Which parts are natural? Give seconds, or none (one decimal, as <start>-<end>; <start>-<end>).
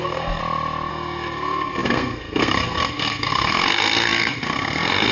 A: 0.4-0.9